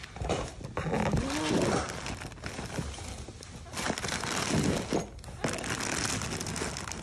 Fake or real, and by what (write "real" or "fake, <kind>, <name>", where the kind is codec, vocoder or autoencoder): real